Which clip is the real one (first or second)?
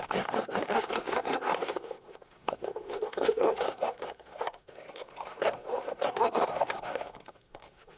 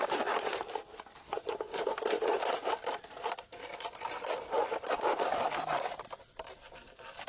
second